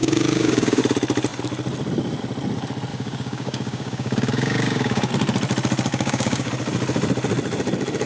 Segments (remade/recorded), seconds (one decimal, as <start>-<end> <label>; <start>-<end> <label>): 0.0-0.8 remade; 0.8-2.9 recorded; 2.9-5.1 remade; 5.1-5.9 recorded; 5.9-6.5 remade; 6.5-8.1 recorded